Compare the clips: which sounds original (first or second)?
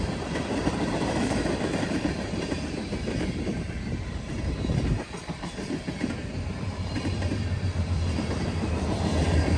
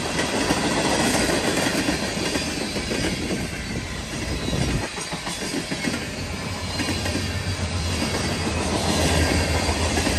second